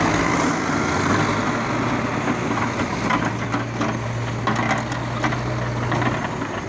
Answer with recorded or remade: recorded